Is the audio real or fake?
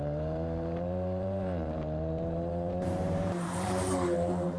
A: fake